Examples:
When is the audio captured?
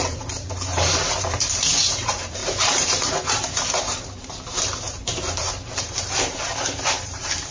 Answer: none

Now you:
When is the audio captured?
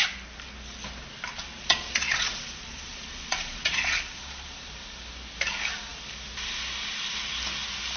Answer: 0.0-1.3; 4.7-8.0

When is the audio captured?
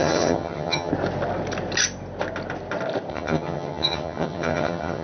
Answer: 0.9-3.1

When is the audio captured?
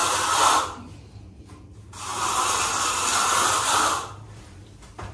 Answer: 0.9-2.1; 4.4-5.1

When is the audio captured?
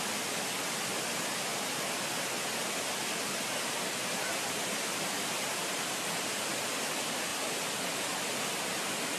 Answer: 0.0-9.2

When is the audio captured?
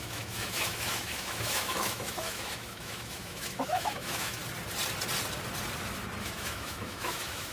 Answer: 4.4-6.2